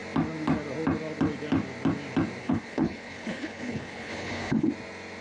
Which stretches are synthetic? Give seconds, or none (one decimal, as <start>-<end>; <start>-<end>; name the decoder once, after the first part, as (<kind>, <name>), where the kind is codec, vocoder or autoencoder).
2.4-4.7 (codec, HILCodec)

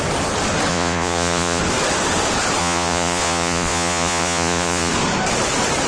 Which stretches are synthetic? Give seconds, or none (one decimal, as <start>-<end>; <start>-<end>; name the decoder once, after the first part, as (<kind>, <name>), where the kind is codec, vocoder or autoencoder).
0.7-1.6 (vocoder, Vocos); 2.6-4.9

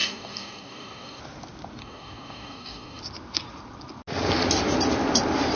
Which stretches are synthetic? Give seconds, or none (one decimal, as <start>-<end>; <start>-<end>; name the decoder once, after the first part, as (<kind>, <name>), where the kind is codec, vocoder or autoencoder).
0.0-1.2 (codec, DAC); 1.8-3.0

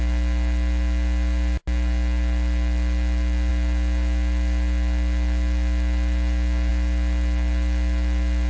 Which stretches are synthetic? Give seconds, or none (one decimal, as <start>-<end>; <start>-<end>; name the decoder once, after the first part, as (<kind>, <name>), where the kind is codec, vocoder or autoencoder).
none

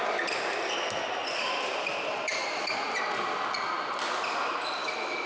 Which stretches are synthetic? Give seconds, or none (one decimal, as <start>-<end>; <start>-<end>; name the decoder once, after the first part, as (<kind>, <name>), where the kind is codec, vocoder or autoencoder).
4.8-5.3 (autoencoder, DAC-VAE)